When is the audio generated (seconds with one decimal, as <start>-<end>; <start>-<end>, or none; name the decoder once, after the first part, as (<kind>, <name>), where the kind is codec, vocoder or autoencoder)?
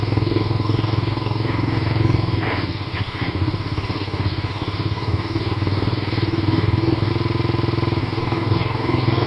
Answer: 0.0-7.1 (codec, DAC); 8.0-9.3